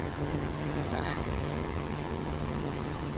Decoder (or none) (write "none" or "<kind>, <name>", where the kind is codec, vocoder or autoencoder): vocoder, HiFi-GAN